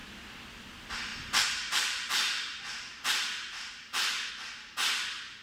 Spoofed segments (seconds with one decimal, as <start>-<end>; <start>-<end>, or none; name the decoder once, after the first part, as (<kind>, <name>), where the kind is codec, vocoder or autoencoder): 1.1-4.3 (vocoder, BigVGAN v2)

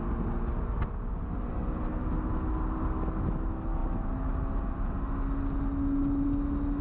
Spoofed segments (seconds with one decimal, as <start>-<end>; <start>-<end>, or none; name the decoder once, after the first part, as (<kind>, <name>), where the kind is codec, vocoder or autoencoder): none

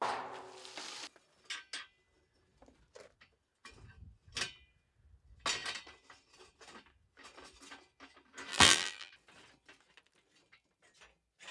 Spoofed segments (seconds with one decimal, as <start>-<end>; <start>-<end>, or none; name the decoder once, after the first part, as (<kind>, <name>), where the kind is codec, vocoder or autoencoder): 8.5-9.1 (vocoder, BigVGAN v2)

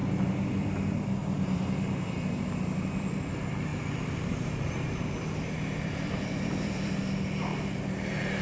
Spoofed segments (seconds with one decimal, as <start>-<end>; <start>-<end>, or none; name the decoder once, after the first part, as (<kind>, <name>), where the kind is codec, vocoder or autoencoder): 1.2-2.4 (vocoder, BigVGAN v2); 3.7-6.9; 7.5-8.4

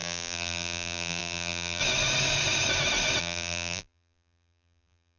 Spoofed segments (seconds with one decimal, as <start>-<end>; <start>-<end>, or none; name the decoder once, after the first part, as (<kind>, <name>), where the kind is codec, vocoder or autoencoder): 0.0-1.8 (vocoder, BigVGAN v2); 3.2-5.2

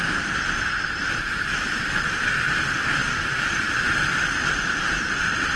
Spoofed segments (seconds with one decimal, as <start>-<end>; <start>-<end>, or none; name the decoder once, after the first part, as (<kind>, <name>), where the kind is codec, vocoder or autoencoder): 3.0-3.7 (vocoder, BigVGAN v2)

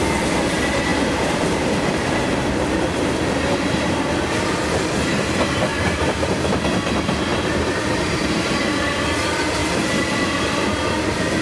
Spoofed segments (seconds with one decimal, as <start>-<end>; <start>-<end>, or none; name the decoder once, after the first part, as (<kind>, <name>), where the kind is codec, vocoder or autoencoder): 0.9-4.1 (vocoder, BigVGAN v2); 5.7-6.6; 7.3-8.5

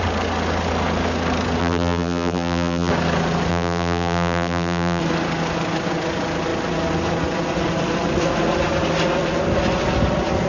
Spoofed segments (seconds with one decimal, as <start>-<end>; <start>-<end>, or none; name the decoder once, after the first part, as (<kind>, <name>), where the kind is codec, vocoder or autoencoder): 1.6-2.9 (vocoder, BigVGAN v2); 3.5-5.0